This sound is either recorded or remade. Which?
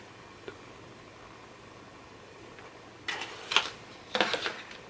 recorded